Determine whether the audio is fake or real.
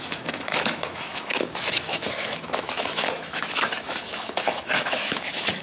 fake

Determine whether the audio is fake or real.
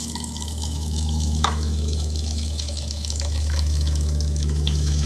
fake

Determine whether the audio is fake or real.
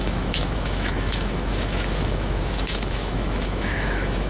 fake